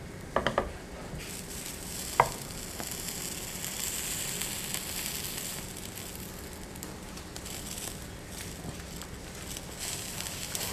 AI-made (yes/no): no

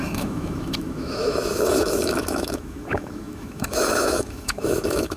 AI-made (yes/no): yes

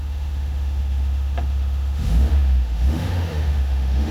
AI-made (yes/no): yes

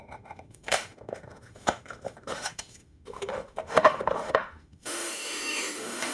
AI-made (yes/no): yes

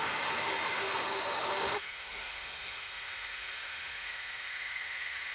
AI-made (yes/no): yes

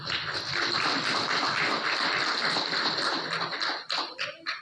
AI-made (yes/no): no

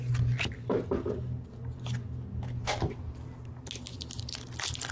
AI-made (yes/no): no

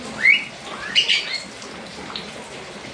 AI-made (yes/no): no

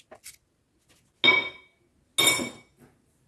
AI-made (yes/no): no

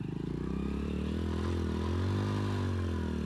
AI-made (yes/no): no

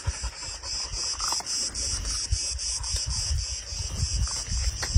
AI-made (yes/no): no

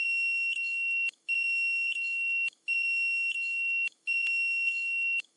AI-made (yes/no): yes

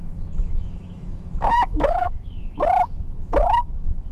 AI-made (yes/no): yes